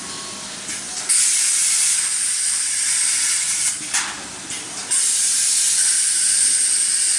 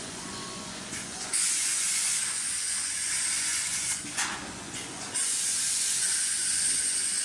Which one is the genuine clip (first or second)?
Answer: first